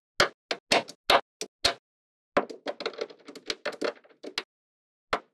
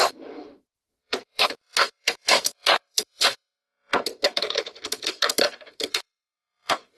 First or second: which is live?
first